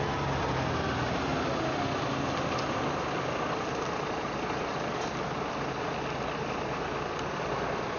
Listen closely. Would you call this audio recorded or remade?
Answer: recorded